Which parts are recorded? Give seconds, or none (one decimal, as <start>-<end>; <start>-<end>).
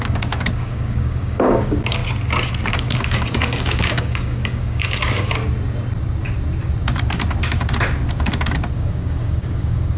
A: 2.0-2.7; 5.4-8.7